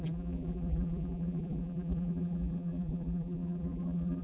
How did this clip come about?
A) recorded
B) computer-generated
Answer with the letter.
B